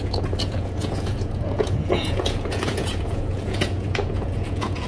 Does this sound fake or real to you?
fake